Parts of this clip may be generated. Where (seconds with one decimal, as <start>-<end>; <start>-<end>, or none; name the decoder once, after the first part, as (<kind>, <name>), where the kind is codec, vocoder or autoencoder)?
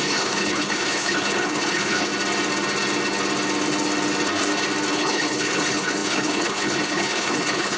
0.0-2.1 (codec, HILCodec); 4.9-7.8